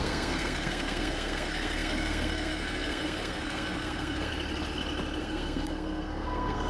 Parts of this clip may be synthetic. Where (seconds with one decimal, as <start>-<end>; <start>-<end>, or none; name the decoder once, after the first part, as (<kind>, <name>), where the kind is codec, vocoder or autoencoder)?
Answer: 0.0-4.3 (codec, SNAC); 5.2-6.7